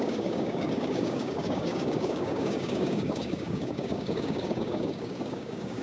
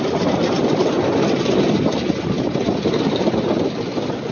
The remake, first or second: first